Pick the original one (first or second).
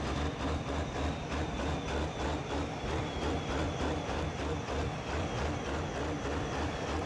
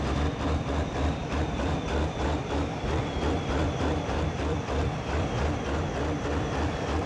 first